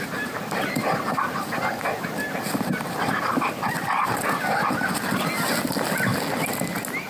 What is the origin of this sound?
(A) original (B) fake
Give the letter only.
A